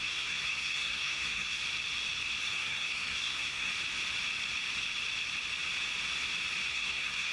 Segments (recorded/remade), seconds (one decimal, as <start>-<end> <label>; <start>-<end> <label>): 0.0-1.6 remade; 1.6-2.4 recorded; 2.4-3.7 remade; 3.7-6.7 recorded; 6.7-7.3 remade